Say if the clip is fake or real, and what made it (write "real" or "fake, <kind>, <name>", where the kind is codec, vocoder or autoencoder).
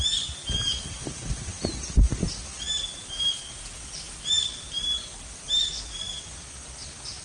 real